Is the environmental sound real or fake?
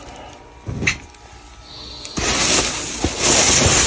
real